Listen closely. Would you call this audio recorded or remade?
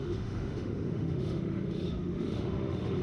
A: remade